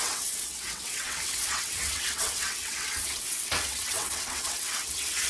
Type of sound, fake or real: fake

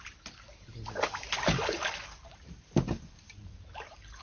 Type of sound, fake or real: real